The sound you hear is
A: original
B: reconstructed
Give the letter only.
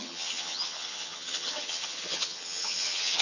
B